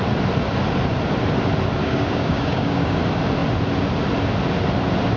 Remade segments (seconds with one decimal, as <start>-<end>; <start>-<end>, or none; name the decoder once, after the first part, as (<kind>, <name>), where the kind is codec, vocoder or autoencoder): 1.8-3.0 (codec, DAC)